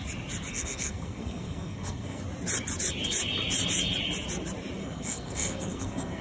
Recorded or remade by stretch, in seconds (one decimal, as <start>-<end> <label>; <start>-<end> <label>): 0.0-0.5 recorded; 0.5-2.2 remade; 2.2-4.8 recorded; 4.8-6.2 remade